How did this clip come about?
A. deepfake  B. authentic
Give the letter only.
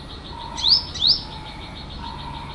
B